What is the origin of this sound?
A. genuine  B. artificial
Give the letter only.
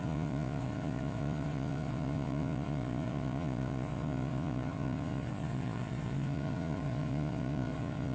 B